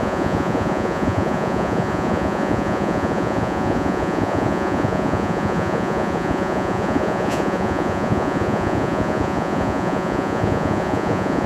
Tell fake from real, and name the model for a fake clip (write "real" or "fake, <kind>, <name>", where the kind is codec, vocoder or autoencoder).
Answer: fake, vocoder, Vocos